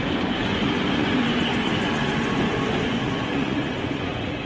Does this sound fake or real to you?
fake